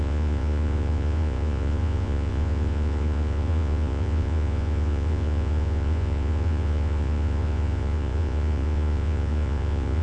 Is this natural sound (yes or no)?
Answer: no